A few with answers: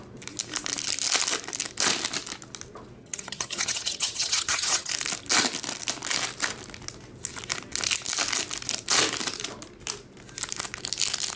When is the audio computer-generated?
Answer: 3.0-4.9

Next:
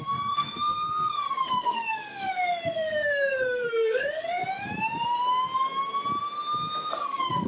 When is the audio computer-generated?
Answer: 0.0-4.4; 6.9-7.5

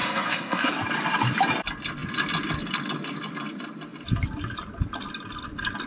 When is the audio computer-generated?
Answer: 0.0-0.7

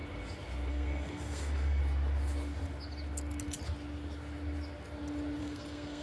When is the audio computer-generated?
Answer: 0.7-1.8; 5.4-6.0

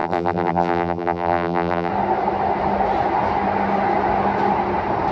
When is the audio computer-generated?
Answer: 0.0-1.9